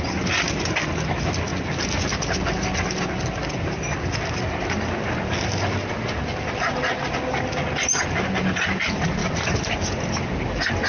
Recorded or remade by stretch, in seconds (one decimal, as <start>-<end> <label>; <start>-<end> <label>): 0.0-10.9 recorded